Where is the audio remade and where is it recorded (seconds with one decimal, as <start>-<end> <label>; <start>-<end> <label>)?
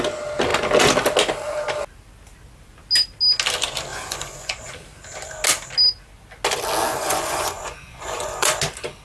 0.0-3.9 recorded; 3.9-4.6 remade; 4.6-6.9 recorded; 6.9-8.6 remade; 8.6-9.0 recorded